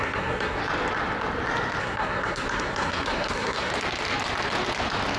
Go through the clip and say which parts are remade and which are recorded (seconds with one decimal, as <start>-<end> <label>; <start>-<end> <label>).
0.0-0.6 remade; 0.6-1.8 recorded; 1.8-3.7 remade; 3.7-5.2 recorded